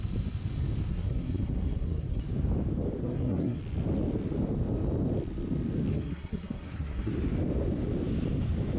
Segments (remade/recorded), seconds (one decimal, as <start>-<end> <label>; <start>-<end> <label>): 0.0-0.9 recorded; 0.9-2.2 remade; 2.2-3.0 recorded; 3.0-3.6 remade; 3.6-5.9 recorded; 5.9-7.1 remade; 7.1-8.8 recorded